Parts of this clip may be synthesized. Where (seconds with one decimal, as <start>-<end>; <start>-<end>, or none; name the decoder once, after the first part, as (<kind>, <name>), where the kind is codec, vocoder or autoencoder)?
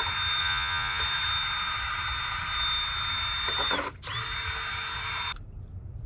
0.4-1.0 (vocoder, Vocos)